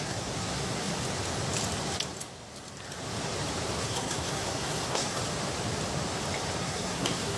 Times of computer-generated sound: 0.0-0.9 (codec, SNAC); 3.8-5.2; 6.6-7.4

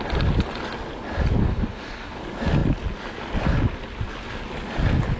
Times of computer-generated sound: 1.4-2.2 (codec, DAC)

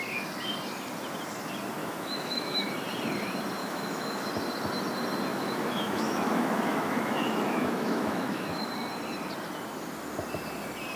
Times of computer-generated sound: 1.8-2.7 (autoencoder, DAC-VAE); 3.6-4.2; 5.3-8.7